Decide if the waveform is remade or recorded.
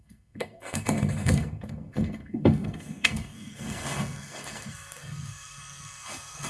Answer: remade